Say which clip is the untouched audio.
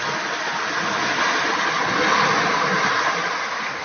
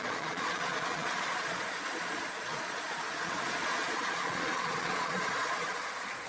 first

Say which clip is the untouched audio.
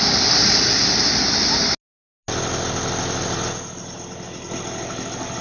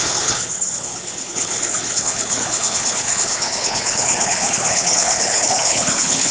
first